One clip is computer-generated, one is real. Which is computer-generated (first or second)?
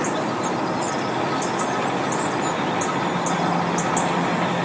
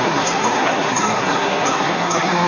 second